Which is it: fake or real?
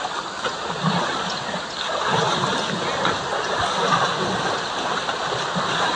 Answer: real